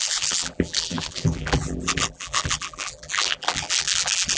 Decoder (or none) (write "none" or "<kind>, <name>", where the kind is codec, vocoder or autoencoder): vocoder, BigVGAN v2